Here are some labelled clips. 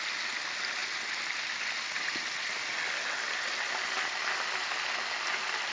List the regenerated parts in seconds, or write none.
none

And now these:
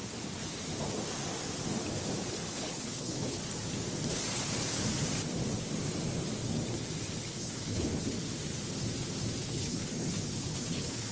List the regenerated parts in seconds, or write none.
2.3-3.4 (codec, HILCodec); 7.4-8.2; 9.4-11.1

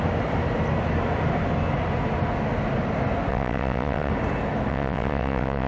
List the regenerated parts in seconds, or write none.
3.3-4.1 (vocoder, WaveNeXt); 4.7-5.7

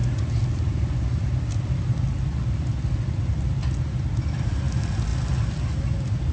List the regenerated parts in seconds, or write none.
none

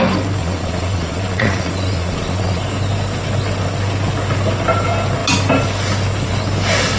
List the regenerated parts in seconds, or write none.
0.4-2.6 (vocoder, Vocos)